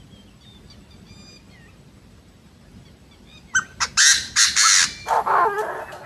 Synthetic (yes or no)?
no